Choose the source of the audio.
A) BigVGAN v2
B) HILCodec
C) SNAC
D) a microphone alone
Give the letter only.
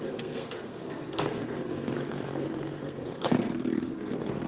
C